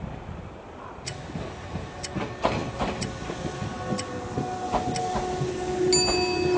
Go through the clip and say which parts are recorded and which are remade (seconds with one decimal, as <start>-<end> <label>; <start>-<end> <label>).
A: 0.0-6.6 recorded